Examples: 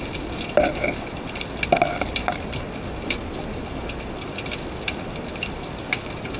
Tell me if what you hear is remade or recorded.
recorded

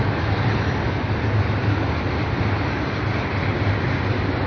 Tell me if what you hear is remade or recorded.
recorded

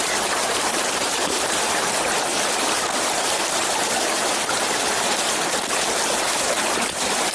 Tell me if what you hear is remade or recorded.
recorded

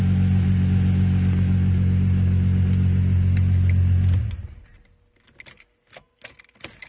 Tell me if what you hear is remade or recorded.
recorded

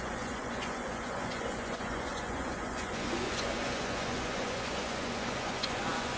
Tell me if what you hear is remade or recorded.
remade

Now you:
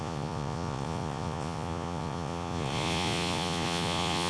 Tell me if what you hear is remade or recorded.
remade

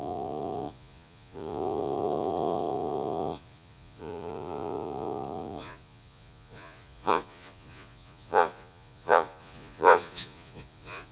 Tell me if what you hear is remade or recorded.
remade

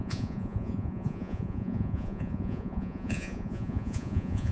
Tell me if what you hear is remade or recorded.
remade